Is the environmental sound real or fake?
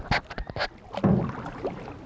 real